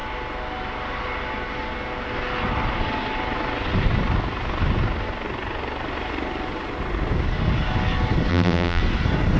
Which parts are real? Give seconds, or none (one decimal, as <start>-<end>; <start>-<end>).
0.0-8.3; 8.8-9.4

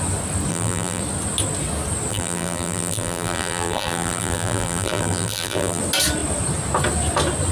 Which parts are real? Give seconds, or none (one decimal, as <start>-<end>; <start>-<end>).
0.0-0.5; 1.0-2.1; 5.8-7.5

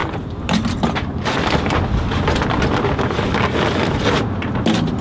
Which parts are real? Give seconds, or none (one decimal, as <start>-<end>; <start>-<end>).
1.4-5.0

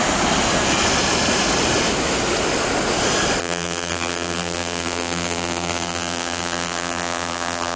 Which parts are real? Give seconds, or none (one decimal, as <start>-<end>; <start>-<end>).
0.0-3.4

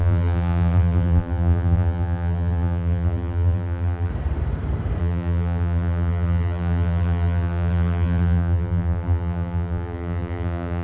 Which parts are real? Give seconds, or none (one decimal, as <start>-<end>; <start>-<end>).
4.1-5.0